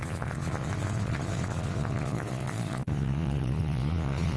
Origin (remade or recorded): remade